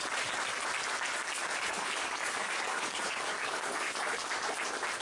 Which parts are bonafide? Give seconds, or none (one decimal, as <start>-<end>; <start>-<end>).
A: 0.0-1.4; 4.1-5.0